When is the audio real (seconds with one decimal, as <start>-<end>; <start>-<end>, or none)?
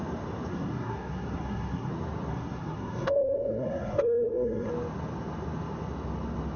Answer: 0.0-0.5; 1.9-2.3; 4.7-6.6